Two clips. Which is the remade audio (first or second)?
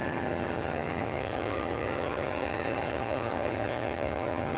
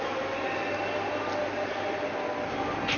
first